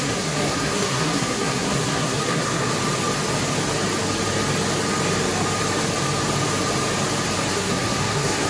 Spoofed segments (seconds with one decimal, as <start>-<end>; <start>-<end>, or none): 0.0-2.7; 7.5-8.5